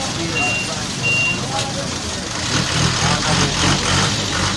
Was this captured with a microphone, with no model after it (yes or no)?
yes